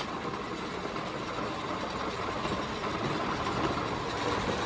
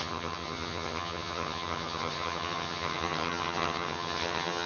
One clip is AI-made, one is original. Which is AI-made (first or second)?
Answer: second